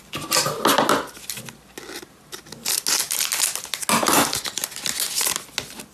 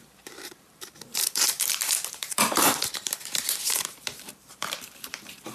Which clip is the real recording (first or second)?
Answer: first